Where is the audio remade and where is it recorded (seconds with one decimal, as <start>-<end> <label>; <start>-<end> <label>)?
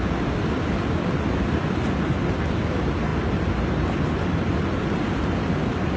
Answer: 0.0-6.0 recorded